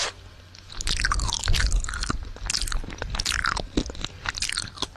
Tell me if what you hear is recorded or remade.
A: recorded